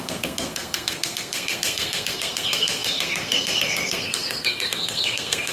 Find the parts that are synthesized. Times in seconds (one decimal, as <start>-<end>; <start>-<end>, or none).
0.0-5.5